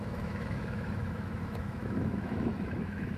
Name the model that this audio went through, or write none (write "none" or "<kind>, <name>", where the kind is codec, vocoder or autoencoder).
autoencoder, DAC-VAE